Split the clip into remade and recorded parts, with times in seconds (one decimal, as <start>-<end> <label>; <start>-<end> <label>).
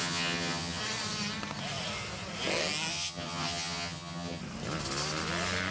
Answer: 0.0-0.8 remade; 0.8-2.9 recorded; 2.9-4.4 remade; 4.4-5.7 recorded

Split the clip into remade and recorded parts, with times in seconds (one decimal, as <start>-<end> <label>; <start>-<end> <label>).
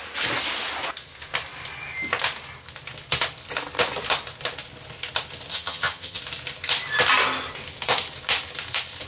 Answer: 0.0-5.5 recorded; 5.5-6.2 remade; 6.2-9.1 recorded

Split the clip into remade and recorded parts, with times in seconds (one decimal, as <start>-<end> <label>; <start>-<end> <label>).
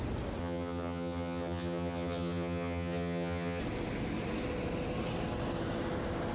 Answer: 0.0-0.4 recorded; 0.4-3.6 remade; 3.6-6.3 recorded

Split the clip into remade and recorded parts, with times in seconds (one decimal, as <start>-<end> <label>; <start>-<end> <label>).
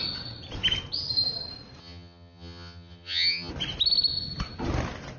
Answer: 0.0-1.8 recorded; 1.8-3.5 remade; 3.5-5.2 recorded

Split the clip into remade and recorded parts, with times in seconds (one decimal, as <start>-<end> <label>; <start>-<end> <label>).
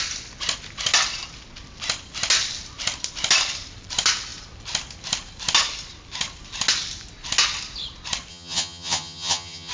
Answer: 0.0-8.3 recorded; 8.3-9.7 remade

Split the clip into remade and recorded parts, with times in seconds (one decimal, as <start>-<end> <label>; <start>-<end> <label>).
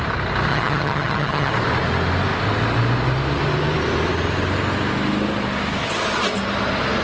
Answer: 0.0-0.5 recorded; 0.5-1.5 remade; 1.5-7.0 recorded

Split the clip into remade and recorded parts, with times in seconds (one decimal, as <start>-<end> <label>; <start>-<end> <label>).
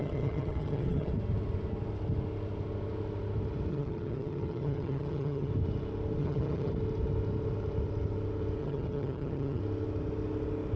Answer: 0.0-1.1 remade; 1.1-3.7 recorded; 3.7-5.5 remade; 5.5-6.2 recorded; 6.2-6.7 remade; 6.7-8.6 recorded; 8.6-9.6 remade; 9.6-10.8 recorded